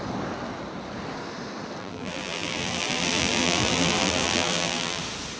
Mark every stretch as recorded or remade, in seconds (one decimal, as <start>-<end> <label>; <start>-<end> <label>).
0.0-1.8 recorded; 1.8-5.0 remade; 5.0-5.4 recorded